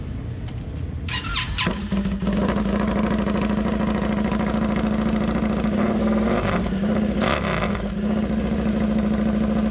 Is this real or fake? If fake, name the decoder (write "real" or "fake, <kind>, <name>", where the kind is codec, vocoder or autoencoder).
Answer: real